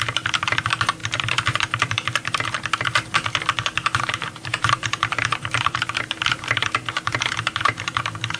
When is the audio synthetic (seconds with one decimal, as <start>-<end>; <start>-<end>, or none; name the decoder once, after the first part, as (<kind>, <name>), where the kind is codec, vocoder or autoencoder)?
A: 3.8-8.0 (vocoder, BigVGAN v2)